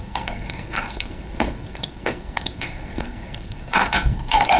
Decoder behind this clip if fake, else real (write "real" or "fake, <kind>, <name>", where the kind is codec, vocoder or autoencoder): fake, codec, SNAC